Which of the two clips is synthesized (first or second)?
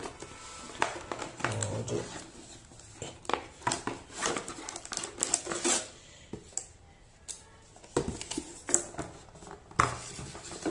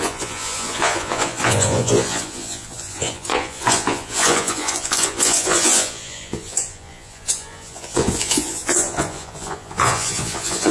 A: second